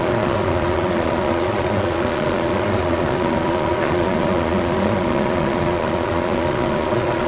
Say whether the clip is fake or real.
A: fake